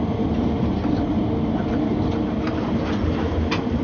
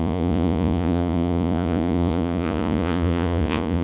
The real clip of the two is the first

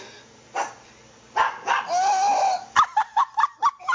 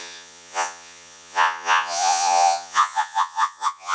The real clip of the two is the first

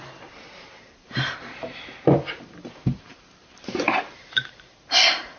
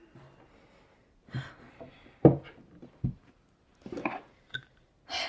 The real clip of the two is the second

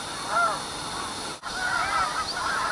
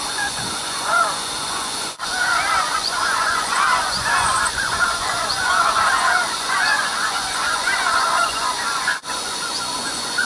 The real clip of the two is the first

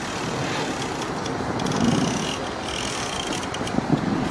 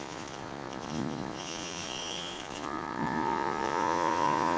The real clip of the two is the first